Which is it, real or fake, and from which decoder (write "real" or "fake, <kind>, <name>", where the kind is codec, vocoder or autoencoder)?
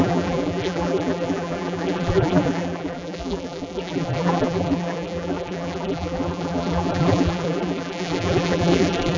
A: fake, vocoder, BigVGAN v2